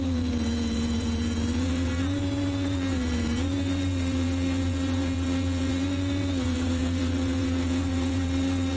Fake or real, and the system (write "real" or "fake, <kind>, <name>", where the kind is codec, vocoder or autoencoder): fake, vocoder, Vocos